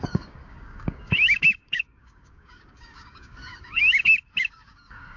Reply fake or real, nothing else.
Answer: fake